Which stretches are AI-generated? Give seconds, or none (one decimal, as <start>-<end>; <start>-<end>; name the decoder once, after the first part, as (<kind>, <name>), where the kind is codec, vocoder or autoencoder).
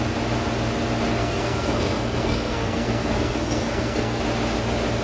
1.2-4.2 (codec, SNAC)